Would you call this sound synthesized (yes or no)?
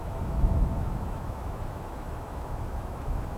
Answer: yes